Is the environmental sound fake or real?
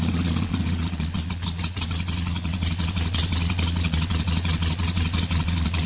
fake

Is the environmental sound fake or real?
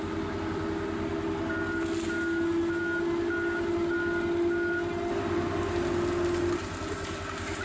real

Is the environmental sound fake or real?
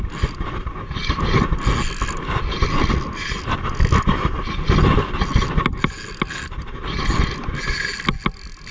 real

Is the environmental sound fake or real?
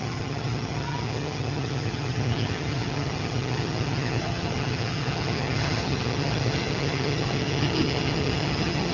fake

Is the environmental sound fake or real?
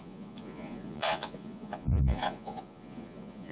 fake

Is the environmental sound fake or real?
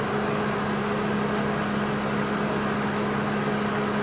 real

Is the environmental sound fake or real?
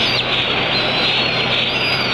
real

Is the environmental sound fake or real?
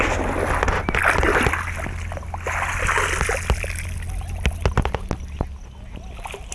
real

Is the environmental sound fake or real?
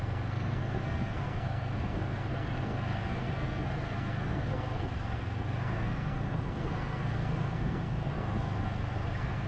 fake